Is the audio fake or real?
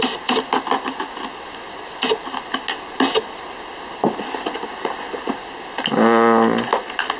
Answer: real